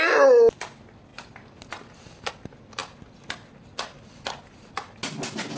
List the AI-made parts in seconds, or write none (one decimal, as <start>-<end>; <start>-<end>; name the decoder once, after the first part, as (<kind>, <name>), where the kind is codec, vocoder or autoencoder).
none